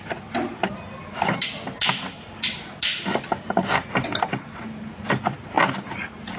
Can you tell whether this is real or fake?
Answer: real